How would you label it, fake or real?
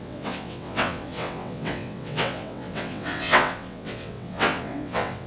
fake